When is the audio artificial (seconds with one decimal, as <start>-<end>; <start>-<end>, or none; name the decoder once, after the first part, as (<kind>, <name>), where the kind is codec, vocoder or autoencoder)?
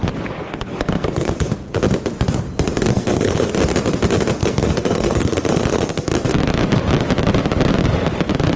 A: 0.4-1.8 (codec, SNAC); 2.9-3.5; 4.4-6.1